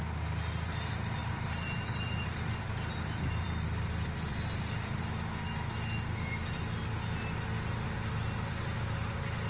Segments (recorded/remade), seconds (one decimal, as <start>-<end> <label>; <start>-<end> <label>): 0.0-1.2 recorded; 1.2-5.0 remade; 5.0-9.5 recorded